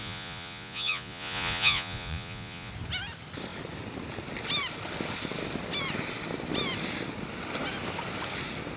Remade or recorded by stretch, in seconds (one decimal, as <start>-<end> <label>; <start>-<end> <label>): 0.0-2.7 remade; 2.7-8.8 recorded